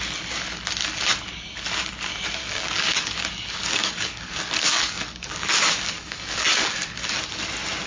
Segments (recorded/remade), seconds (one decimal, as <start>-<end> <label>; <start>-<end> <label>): 0.0-2.4 recorded; 2.4-7.1 remade; 7.1-7.9 recorded